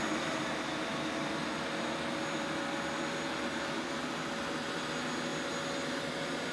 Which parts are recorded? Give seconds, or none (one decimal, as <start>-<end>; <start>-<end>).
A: 0.0-6.5